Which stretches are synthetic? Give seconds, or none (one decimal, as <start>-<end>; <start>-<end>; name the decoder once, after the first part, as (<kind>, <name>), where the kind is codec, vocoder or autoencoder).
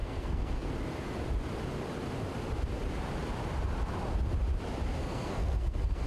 0.0-0.7 (codec, SNAC); 5.0-6.1